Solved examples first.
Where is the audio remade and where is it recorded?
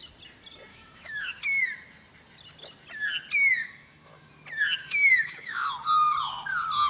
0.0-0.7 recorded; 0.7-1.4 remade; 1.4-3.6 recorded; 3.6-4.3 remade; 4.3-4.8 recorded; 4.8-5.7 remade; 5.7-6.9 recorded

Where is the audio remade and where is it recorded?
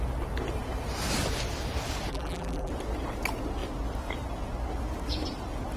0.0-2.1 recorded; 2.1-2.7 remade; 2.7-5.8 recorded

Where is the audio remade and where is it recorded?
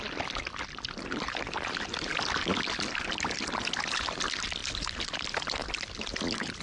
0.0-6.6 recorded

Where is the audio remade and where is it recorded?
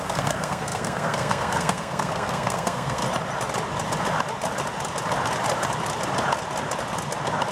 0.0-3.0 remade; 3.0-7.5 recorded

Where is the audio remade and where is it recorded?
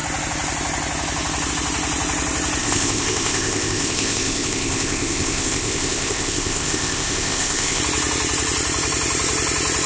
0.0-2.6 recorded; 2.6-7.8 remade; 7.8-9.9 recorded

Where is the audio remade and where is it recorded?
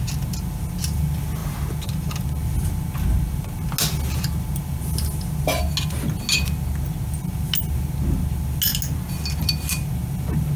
0.0-10.6 recorded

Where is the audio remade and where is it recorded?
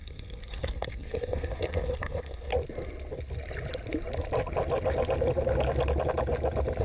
0.0-2.5 remade; 2.5-6.8 recorded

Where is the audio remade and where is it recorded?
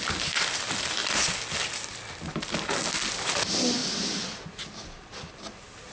0.0-5.9 recorded